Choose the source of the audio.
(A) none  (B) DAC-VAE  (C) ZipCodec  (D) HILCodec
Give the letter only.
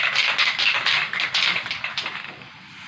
A